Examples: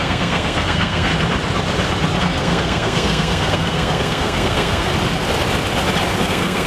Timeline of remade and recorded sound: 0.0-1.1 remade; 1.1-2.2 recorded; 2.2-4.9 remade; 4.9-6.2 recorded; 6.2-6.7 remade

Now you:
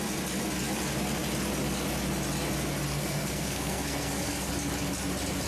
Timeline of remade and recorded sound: 0.0-2.9 recorded; 2.9-4.5 remade; 4.5-5.5 recorded

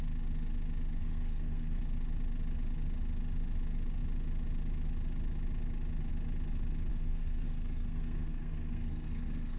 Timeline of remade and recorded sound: 0.0-1.0 recorded; 1.0-1.8 remade; 1.8-6.9 recorded; 6.9-9.6 remade

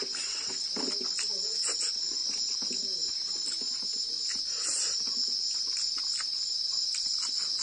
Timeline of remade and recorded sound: 0.0-7.6 recorded

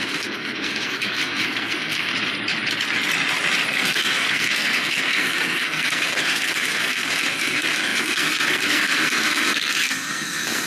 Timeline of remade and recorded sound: 0.0-2.1 remade; 2.1-3.7 recorded; 3.7-10.7 remade

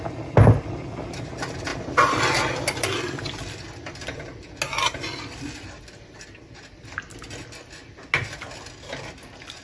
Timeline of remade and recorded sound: 0.0-9.6 recorded

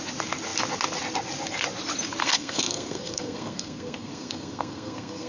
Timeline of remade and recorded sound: 0.0-2.2 recorded; 2.2-5.3 remade